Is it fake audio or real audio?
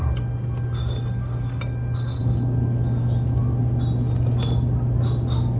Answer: real